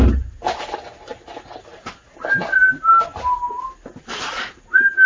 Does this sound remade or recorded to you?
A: recorded